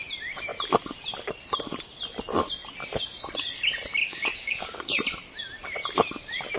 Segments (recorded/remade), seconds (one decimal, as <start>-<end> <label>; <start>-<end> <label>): 0.0-4.0 recorded; 4.0-5.0 remade; 5.0-6.6 recorded